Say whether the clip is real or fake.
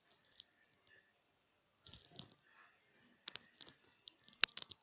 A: fake